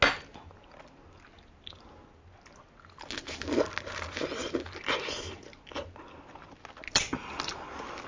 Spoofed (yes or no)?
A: no